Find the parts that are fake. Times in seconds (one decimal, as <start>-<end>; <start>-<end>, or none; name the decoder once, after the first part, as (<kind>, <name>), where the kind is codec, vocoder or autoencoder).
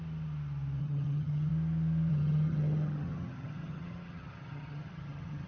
0.8-1.5 (vocoder, HiFi-GAN); 2.1-5.5